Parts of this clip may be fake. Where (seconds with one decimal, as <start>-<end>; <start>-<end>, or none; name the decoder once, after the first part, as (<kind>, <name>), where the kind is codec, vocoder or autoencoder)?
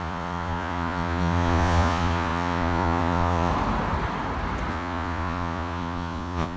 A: 0.0-3.5 (vocoder, Vocos); 4.7-6.6